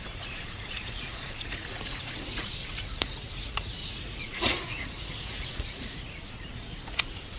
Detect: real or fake fake